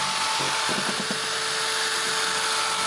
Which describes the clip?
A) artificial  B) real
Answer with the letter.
B